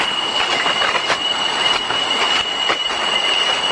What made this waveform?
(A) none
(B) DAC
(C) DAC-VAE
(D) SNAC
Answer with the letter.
A